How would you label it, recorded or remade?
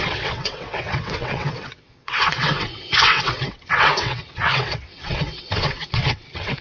remade